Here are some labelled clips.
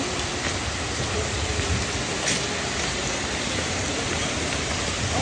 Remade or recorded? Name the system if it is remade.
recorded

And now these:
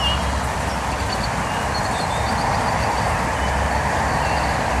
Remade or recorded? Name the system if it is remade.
recorded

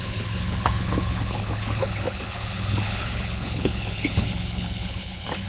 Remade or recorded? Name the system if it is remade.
remade, codec, HILCodec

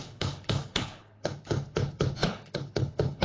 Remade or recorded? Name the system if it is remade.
remade, codec, HILCodec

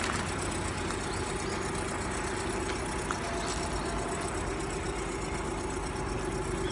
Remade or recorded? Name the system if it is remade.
recorded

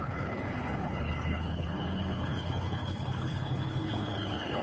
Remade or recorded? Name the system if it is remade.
remade, codec, HILCodec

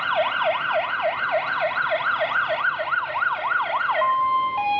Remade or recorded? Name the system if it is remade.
recorded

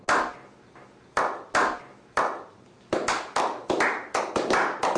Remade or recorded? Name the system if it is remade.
recorded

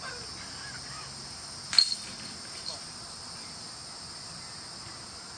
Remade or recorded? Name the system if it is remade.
recorded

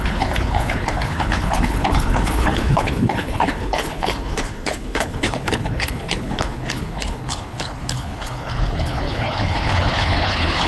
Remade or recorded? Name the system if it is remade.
remade, codec, HILCodec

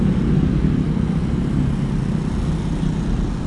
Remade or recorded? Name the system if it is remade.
recorded